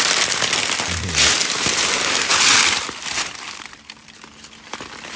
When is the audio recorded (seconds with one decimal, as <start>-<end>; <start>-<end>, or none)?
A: 0.0-5.2